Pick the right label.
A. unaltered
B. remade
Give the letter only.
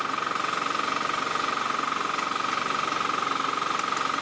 A